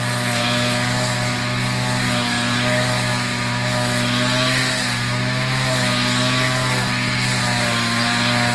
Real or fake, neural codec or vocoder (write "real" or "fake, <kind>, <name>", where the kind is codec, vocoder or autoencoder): real